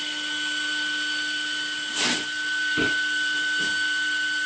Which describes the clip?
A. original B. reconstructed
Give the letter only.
A